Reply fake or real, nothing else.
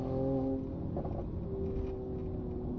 real